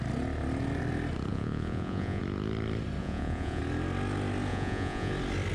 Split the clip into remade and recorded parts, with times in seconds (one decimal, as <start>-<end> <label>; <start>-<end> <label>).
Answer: 0.0-1.3 recorded; 1.3-2.2 remade; 2.2-3.0 recorded; 3.0-3.6 remade; 3.6-4.5 recorded; 4.5-5.1 remade; 5.1-5.5 recorded